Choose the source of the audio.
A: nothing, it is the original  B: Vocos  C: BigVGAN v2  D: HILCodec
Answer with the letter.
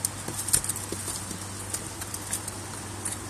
A